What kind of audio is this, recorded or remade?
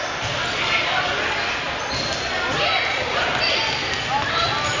recorded